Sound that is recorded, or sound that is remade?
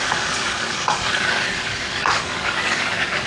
remade